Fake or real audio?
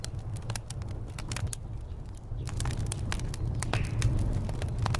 real